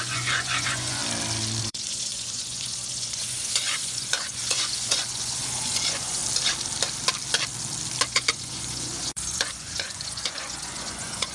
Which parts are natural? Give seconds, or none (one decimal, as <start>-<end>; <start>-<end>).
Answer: 1.0-1.6; 6.2-8.1